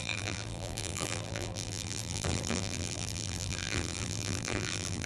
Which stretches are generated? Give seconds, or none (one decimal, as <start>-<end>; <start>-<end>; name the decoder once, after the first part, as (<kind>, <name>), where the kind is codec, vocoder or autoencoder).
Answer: 0.0-5.1 (vocoder, BigVGAN v2)